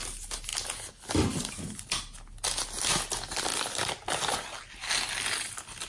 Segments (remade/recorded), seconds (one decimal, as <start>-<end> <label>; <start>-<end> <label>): 0.0-5.9 recorded